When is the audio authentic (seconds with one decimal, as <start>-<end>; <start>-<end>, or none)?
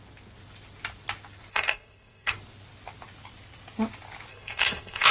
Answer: 0.0-1.5; 2.3-4.3